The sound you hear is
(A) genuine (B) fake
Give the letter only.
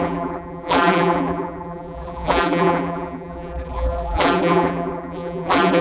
B